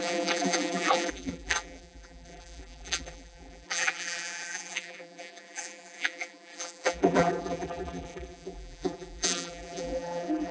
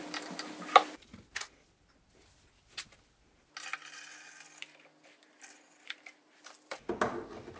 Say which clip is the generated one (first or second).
first